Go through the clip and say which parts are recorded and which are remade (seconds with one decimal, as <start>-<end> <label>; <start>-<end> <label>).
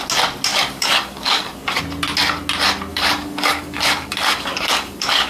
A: 0.0-0.5 recorded; 0.5-1.8 remade; 1.8-2.9 recorded; 2.9-5.3 remade